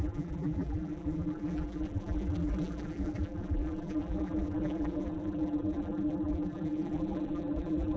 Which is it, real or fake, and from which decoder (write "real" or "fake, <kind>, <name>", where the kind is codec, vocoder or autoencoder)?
fake, vocoder, BigVGAN v2